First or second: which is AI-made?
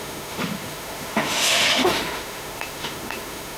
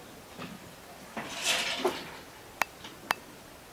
first